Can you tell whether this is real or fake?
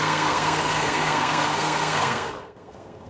fake